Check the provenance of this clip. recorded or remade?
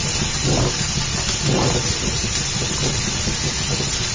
recorded